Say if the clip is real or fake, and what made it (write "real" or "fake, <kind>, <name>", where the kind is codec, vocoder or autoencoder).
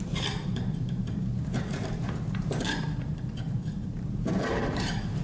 fake, vocoder, BigVGAN v2